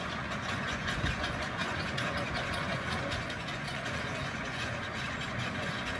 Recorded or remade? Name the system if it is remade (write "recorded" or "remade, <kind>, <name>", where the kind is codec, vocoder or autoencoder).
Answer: remade, vocoder, Vocos